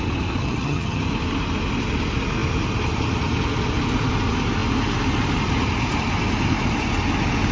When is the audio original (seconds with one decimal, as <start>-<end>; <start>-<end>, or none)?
0.0-0.4; 1.0-7.5